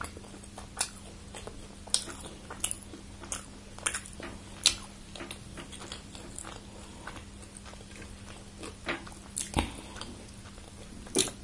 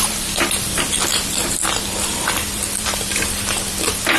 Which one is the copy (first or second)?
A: second